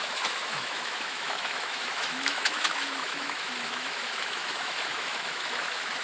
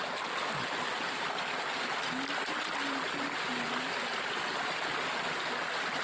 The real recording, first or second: second